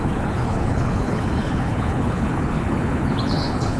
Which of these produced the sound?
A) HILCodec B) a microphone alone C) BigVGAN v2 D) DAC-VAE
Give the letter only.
A